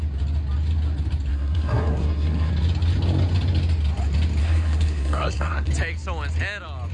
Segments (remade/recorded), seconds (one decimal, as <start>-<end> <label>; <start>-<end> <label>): 0.0-1.3 recorded; 1.3-2.5 remade; 2.5-4.4 recorded; 4.4-5.7 remade; 5.7-6.9 recorded